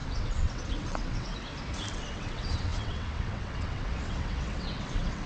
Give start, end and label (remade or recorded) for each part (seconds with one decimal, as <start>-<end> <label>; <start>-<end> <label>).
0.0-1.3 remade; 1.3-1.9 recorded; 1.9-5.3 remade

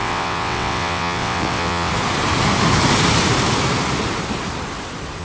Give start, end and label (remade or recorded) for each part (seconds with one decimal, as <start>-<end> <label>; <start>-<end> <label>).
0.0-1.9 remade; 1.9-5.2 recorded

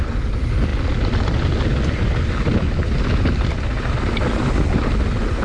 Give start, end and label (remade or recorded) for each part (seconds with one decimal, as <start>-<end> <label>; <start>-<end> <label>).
0.0-5.4 recorded

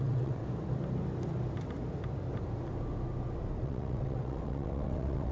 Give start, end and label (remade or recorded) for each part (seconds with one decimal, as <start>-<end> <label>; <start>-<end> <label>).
0.0-0.4 remade; 0.4-3.6 recorded; 3.6-5.3 remade

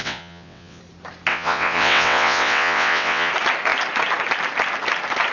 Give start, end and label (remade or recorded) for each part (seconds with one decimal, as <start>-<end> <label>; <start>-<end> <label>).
0.0-0.8 remade; 0.8-1.3 recorded; 1.3-3.3 remade; 3.3-5.3 recorded